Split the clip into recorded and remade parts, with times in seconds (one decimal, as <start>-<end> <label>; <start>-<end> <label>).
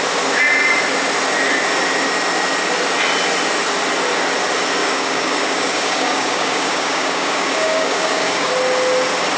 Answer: 0.0-4.8 recorded; 4.8-8.5 remade; 8.5-9.4 recorded